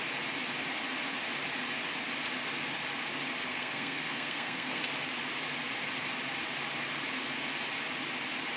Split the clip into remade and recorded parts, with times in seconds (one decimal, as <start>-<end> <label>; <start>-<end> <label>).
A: 0.0-3.5 recorded; 3.5-4.8 remade; 4.8-8.6 recorded